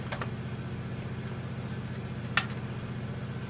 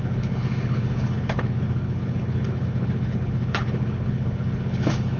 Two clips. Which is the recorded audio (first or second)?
first